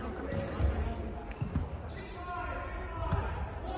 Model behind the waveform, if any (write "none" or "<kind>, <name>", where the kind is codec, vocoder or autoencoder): none